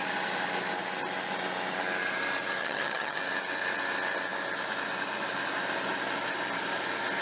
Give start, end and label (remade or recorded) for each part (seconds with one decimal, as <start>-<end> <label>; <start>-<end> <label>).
0.0-2.6 recorded; 2.6-3.2 remade; 3.2-7.2 recorded